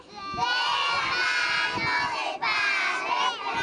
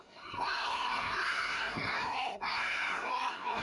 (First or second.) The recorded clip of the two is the first